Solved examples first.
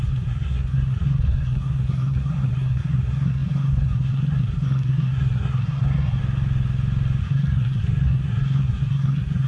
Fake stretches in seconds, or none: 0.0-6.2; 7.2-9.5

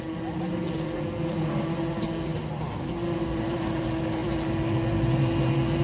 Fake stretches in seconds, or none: none

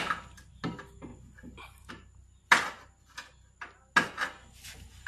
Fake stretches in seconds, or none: none

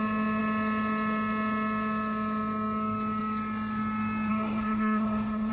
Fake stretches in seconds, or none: 4.3-5.5

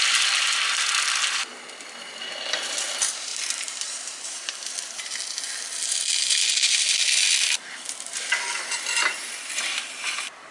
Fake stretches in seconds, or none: 0.0-3.3; 4.3-10.5

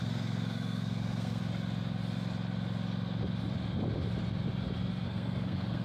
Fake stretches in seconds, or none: 0.0-1.4; 4.9-5.8